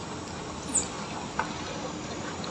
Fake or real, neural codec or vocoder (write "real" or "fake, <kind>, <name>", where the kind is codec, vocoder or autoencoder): real